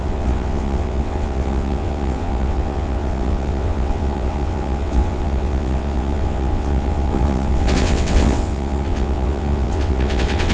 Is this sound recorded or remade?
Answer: remade